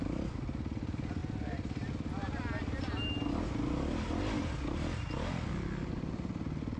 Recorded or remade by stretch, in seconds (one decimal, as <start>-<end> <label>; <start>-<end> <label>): 0.0-6.8 recorded